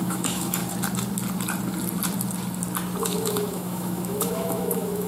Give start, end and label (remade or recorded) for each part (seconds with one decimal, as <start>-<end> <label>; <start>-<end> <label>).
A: 0.0-0.6 remade; 0.6-3.0 recorded; 3.0-5.1 remade